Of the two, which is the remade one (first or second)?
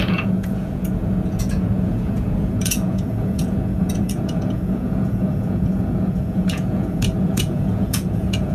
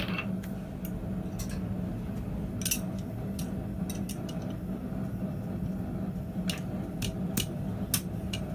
first